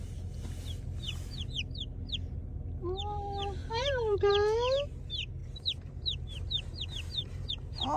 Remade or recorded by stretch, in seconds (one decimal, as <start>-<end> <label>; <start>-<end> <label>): 0.0-3.6 recorded; 3.6-4.3 remade; 4.3-5.4 recorded; 5.4-7.5 remade; 7.5-8.0 recorded